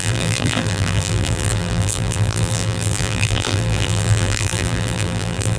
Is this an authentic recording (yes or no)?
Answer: no